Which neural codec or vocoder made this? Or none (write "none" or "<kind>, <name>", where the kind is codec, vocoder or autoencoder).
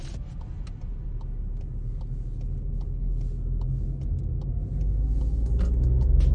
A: none